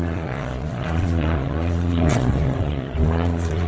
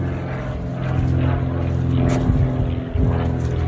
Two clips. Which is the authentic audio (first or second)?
second